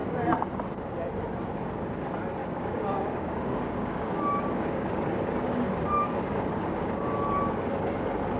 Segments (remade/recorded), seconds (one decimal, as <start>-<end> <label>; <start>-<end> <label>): 0.0-2.4 recorded; 2.4-7.4 remade; 7.4-8.4 recorded